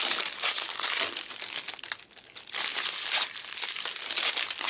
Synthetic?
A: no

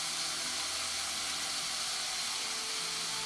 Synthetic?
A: no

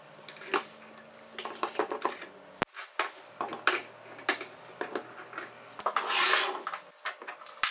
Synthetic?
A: no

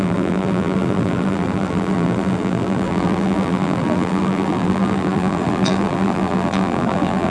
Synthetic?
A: yes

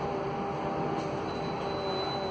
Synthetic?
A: no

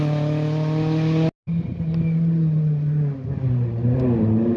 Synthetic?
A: no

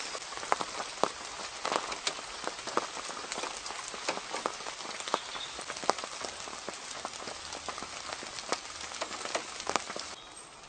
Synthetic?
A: no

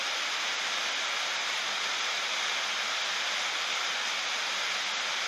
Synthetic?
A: no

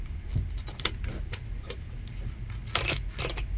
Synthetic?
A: no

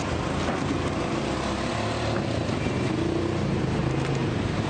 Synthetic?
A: no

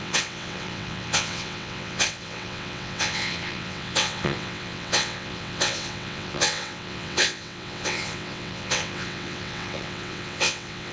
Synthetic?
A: yes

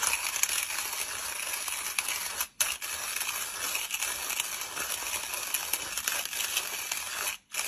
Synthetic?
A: no